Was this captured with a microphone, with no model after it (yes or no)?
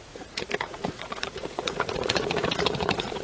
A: no